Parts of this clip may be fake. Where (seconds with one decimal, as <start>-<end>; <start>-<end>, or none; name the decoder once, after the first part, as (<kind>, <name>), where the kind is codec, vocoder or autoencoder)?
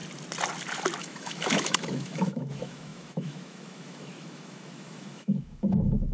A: 1.0-6.1 (autoencoder, DAC-VAE)